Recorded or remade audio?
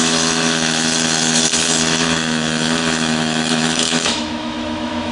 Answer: remade